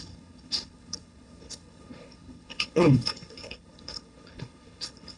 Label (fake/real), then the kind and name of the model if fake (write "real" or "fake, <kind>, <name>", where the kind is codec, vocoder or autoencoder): fake, codec, HILCodec